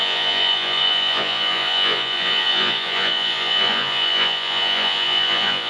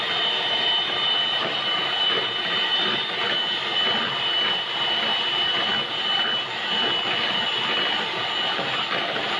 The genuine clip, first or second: second